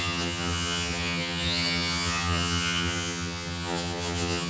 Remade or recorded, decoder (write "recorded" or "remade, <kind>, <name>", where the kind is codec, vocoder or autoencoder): remade, vocoder, HiFi-GAN